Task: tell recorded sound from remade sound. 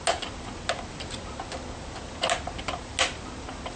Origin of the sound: recorded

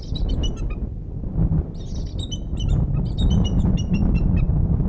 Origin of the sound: recorded